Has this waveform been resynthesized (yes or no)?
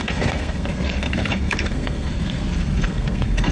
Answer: yes